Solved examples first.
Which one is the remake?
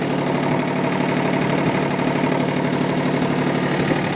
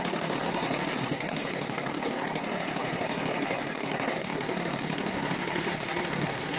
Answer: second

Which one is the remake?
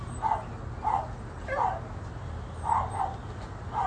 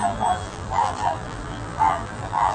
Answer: second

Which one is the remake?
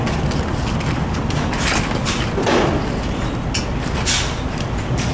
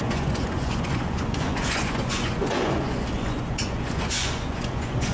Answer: second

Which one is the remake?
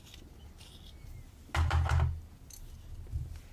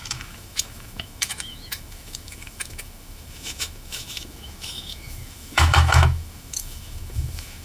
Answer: second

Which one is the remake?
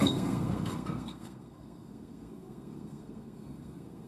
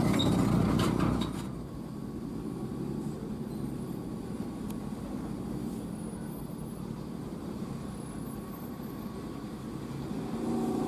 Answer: first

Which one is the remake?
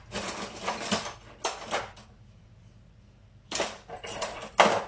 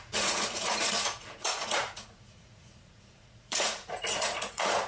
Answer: second